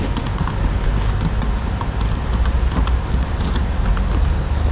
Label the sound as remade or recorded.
recorded